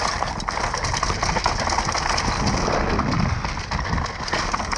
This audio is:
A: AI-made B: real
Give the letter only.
B